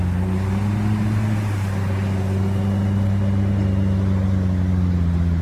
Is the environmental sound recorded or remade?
recorded